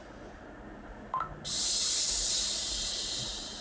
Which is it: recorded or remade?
recorded